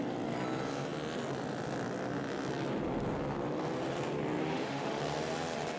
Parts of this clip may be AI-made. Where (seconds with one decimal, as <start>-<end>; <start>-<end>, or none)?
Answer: 4.4-5.0